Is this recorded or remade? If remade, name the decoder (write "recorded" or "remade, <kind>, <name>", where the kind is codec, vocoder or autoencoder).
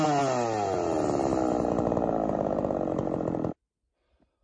recorded